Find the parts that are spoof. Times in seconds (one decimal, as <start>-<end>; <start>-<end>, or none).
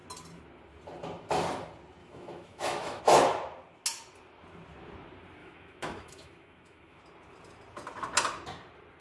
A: 2.0-3.0; 5.4-7.0